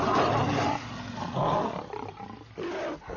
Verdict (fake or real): real